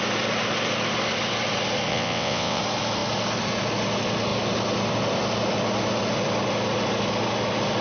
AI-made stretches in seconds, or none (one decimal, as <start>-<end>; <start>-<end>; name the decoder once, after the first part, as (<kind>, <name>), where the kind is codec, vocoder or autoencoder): 1.9-2.6 (vocoder, WaveNeXt)